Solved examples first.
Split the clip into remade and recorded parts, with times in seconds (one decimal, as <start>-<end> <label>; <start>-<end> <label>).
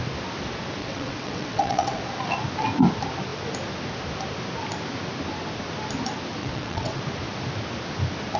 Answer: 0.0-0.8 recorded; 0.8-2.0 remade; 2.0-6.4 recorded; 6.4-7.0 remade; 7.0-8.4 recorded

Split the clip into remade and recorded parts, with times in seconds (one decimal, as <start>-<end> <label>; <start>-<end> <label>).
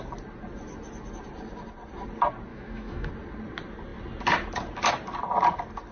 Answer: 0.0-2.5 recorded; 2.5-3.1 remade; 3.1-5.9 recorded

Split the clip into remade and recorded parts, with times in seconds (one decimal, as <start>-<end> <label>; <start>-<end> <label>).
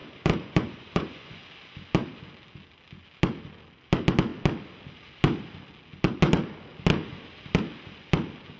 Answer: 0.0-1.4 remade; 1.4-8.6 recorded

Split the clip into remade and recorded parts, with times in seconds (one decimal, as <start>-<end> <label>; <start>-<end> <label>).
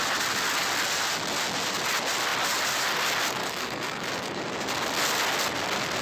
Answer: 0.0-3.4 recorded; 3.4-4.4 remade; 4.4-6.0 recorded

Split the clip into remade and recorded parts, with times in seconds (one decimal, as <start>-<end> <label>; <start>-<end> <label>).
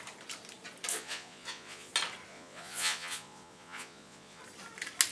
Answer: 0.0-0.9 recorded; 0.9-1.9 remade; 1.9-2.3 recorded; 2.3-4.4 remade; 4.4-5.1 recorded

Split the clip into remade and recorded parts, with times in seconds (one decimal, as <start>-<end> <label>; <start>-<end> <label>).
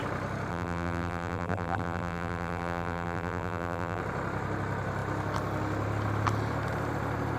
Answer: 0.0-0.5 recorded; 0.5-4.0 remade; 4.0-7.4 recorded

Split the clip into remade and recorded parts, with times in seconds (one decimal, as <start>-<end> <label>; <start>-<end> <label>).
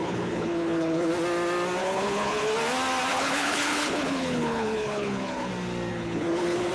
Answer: 0.0-1.1 remade; 1.1-1.8 recorded; 1.8-2.5 remade; 2.5-3.1 recorded; 3.1-5.5 remade; 5.5-5.9 recorded; 5.9-6.7 remade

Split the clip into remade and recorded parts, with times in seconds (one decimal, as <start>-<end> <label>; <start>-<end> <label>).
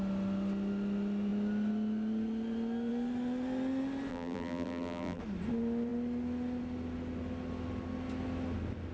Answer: 0.0-4.1 recorded; 4.1-5.2 remade; 5.2-8.9 recorded